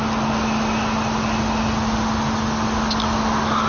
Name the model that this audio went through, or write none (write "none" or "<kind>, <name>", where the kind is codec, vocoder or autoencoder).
none